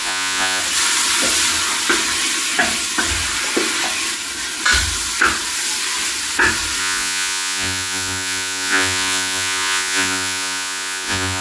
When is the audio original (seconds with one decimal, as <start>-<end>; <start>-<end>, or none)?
0.6-6.8